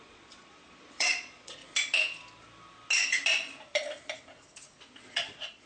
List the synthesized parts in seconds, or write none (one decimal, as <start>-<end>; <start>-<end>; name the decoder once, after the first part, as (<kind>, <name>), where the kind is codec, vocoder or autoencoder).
0.0-1.6 (vocoder, Vocos); 5.0-5.7